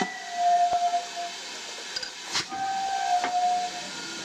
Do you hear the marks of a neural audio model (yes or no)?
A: no